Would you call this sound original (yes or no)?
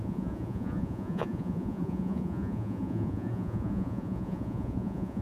no